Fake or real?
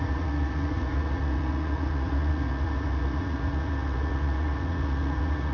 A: fake